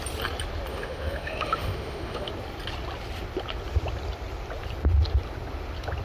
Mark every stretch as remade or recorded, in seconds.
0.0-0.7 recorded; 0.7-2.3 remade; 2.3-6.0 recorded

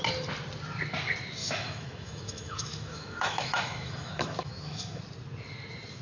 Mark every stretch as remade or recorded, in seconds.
0.0-1.4 recorded; 1.4-5.0 remade; 5.0-6.0 recorded

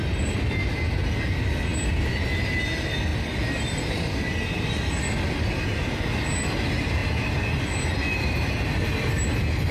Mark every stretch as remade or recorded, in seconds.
0.0-9.7 recorded

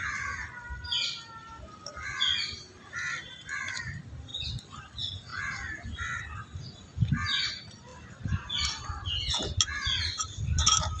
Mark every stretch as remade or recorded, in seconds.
0.0-11.0 recorded

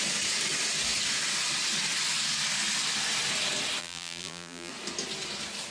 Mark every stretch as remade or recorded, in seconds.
0.0-3.8 recorded; 3.8-4.7 remade; 4.7-5.7 recorded